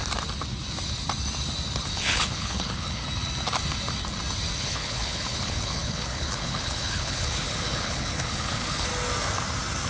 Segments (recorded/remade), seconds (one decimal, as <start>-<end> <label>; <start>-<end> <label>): 0.0-1.8 recorded; 1.8-3.0 remade; 3.0-4.6 recorded; 4.6-8.9 remade; 8.9-9.9 recorded